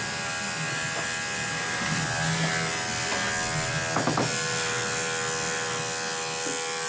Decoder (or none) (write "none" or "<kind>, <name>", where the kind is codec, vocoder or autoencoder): none